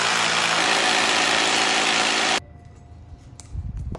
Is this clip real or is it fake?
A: real